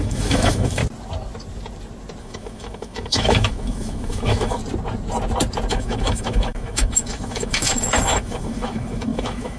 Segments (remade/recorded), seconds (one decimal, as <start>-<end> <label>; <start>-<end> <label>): 0.0-0.8 remade; 0.8-2.2 recorded; 2.2-4.6 remade; 4.6-5.7 recorded; 5.7-9.6 remade